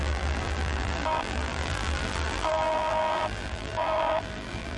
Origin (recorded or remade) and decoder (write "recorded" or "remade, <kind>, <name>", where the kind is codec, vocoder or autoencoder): remade, vocoder, BigVGAN v2